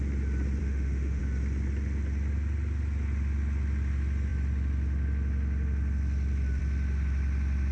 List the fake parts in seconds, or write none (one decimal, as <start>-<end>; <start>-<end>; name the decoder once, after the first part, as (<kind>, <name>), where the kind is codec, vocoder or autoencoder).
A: 0.6-1.2 (autoencoder, DAC-VAE)